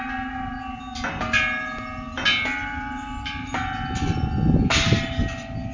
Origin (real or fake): real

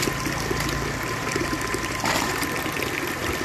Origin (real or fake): real